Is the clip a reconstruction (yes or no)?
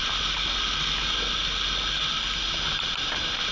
no